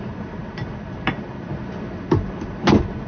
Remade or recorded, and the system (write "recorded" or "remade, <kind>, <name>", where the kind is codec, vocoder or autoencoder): recorded